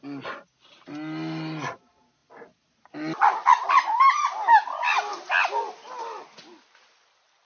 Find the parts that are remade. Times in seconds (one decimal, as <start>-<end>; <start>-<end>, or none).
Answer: none